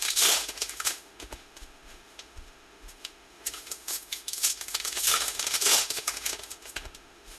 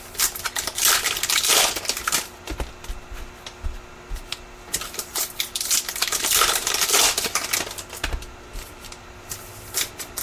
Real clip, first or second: second